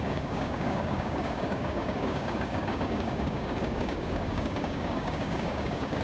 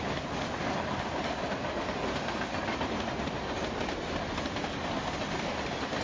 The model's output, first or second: first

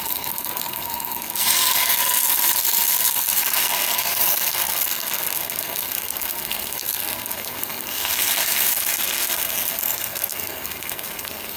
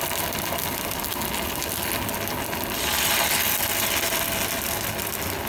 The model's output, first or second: first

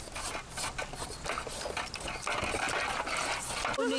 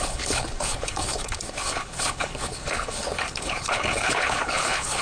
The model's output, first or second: second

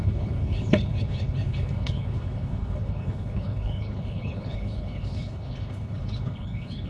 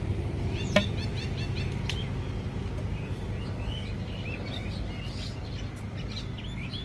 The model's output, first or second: first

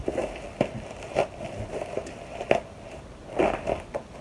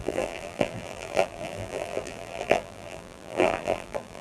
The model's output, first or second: second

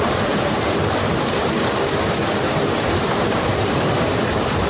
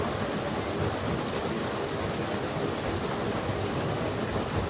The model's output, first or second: first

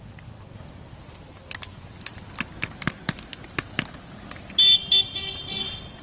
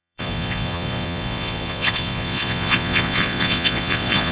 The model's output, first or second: second